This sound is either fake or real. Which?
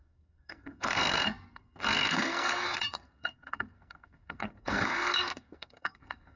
fake